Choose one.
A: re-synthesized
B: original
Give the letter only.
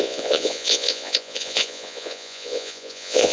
A